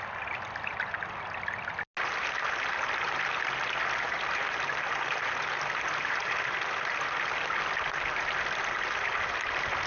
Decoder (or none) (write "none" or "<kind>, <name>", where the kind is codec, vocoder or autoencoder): none